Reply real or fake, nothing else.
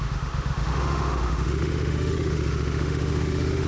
fake